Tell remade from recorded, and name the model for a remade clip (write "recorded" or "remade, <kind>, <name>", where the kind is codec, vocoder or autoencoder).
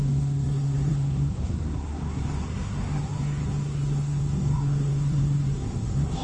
remade, codec, SNAC